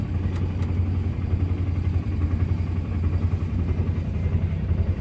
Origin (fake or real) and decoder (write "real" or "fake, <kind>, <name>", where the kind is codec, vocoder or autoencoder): real